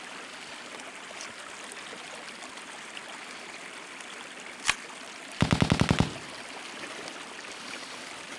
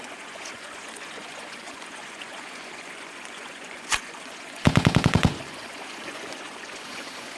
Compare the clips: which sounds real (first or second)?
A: first